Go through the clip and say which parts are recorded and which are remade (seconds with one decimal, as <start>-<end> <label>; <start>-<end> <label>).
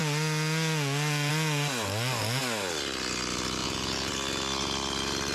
0.0-3.6 recorded; 3.6-4.1 remade; 4.1-5.3 recorded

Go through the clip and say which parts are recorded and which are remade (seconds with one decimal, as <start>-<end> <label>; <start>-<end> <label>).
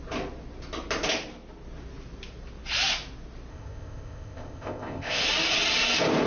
0.0-3.5 recorded; 3.5-5.2 remade; 5.2-6.3 recorded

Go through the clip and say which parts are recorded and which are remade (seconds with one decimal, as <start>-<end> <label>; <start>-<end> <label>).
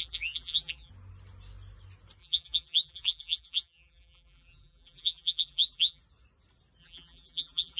0.0-0.9 remade; 0.9-2.2 recorded; 2.2-6.0 remade; 6.0-6.8 recorded; 6.8-7.8 remade